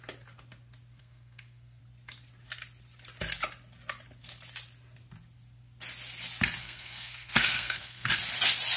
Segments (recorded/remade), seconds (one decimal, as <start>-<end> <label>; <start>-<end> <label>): 0.0-1.0 recorded; 1.0-1.8 remade; 1.8-6.6 recorded; 6.6-8.1 remade; 8.1-8.8 recorded